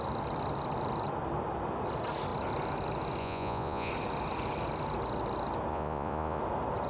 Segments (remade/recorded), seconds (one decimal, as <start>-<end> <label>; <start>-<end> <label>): 0.0-3.2 recorded; 3.2-3.9 remade; 3.9-5.7 recorded; 5.7-6.4 remade; 6.4-6.9 recorded